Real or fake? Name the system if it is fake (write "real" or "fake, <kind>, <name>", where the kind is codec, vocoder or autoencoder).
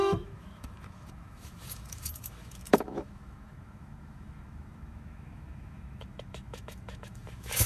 fake, autoencoder, DAC-VAE